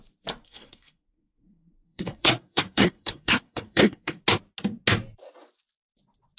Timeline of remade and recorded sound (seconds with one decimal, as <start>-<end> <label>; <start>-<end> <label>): 0.0-0.4 recorded; 0.4-4.2 remade; 4.2-6.4 recorded